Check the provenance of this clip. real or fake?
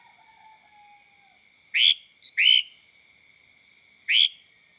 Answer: real